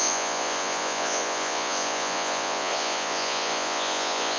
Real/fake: fake